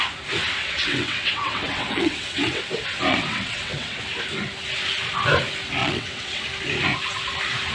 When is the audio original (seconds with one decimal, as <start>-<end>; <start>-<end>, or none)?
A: 0.0-0.6; 2.6-3.1; 4.0-5.8; 6.4-7.7